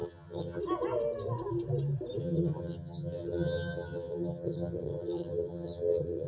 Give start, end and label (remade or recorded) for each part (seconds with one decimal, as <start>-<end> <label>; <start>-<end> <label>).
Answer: 0.0-0.6 remade; 0.6-2.2 recorded; 2.2-6.3 remade